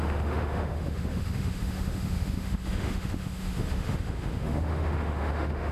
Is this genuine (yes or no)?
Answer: no